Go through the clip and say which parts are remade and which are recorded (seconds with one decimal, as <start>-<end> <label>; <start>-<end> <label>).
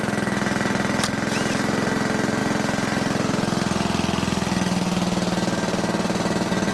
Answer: 0.0-6.7 recorded